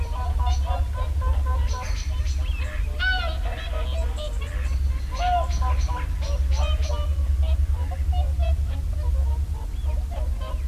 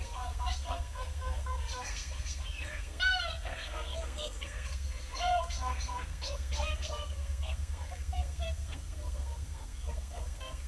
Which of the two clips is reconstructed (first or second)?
second